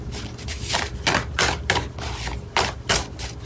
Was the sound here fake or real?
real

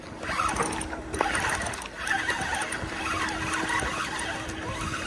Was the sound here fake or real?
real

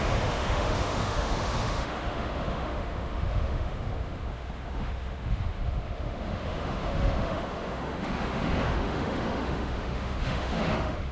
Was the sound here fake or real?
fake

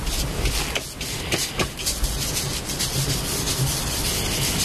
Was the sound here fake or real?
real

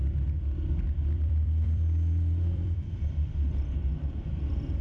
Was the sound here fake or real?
fake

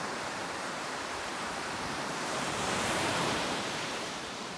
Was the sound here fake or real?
fake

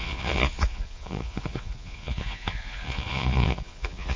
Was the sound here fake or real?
fake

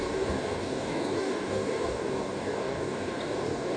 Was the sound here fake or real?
fake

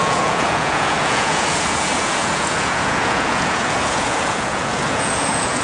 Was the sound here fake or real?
fake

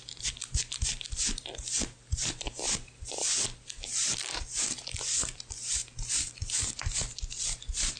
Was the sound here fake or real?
fake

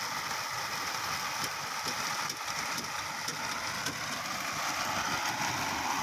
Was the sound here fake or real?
real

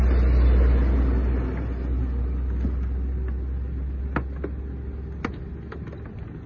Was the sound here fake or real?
real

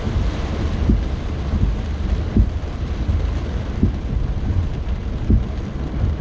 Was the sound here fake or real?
real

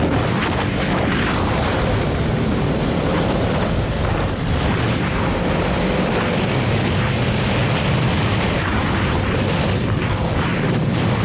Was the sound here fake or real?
fake